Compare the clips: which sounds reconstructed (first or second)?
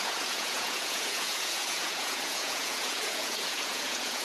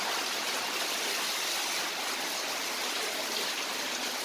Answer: first